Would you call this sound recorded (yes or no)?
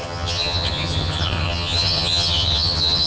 no